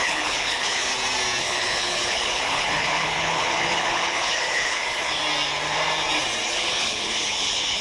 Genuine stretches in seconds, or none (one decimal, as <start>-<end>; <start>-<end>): 0.9-1.4; 5.2-6.5